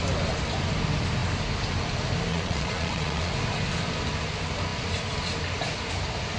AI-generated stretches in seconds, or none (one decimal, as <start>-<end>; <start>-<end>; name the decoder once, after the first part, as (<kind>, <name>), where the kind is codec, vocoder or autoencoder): 2.3-3.3 (vocoder, Vocos)